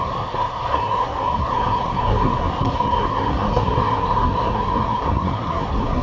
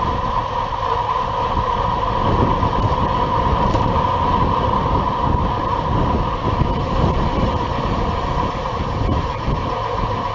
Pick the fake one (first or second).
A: first